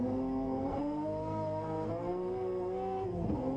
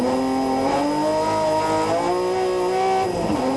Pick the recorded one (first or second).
second